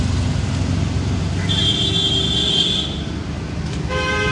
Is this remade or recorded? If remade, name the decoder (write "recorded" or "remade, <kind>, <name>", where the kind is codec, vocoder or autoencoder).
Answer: recorded